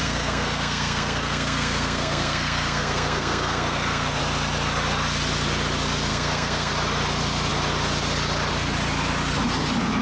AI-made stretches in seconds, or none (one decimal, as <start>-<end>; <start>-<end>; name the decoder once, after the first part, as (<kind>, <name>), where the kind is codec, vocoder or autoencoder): 0.0-4.2 (codec, SNAC); 6.1-6.7